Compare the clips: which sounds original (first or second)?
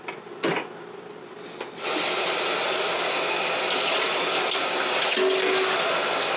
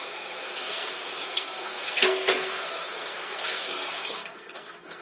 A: first